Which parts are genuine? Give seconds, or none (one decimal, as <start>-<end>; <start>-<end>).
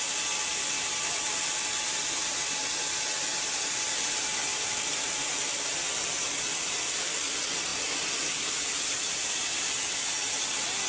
0.0-0.5; 2.6-4.5; 5.3-10.9